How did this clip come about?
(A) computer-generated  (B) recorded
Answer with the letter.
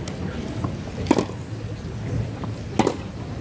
B